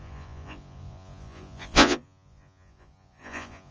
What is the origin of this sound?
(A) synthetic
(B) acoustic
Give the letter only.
A